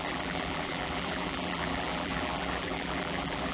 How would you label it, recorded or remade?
remade